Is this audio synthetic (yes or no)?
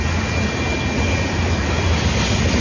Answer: no